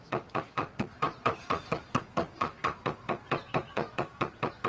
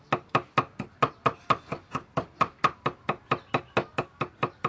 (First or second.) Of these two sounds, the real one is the second